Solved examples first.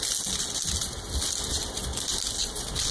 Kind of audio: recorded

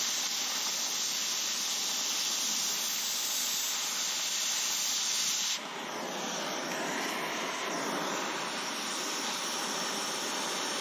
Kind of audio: recorded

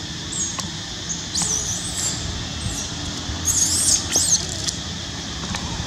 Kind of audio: recorded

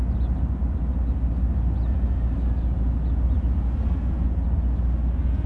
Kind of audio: recorded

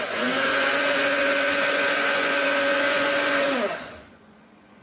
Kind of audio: remade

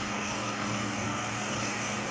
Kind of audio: remade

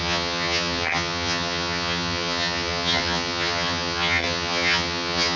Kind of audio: remade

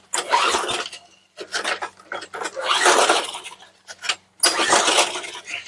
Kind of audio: recorded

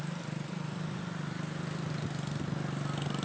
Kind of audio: recorded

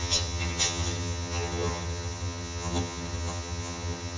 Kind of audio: remade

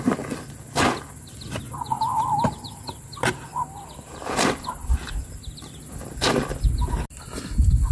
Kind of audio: recorded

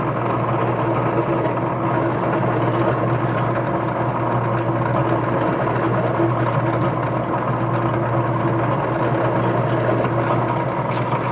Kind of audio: recorded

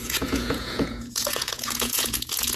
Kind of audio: remade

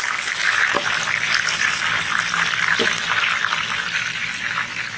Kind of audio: recorded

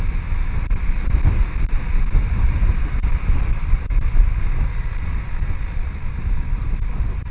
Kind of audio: recorded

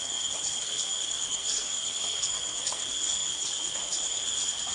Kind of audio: remade